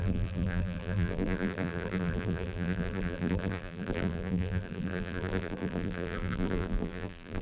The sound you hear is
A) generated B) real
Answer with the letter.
A